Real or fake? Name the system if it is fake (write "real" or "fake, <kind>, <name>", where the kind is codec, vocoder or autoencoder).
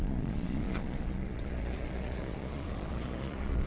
fake, vocoder, Vocos